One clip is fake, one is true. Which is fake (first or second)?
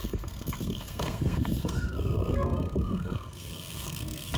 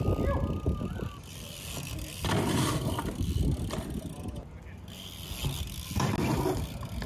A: first